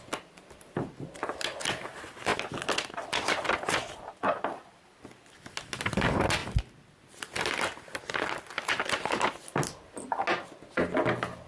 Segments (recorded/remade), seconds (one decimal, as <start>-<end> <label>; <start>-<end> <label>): 0.0-11.5 recorded